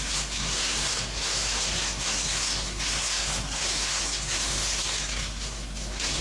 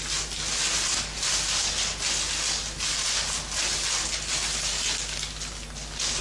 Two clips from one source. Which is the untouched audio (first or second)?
second